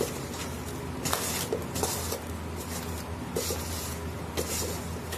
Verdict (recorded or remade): recorded